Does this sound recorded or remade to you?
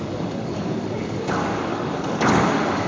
remade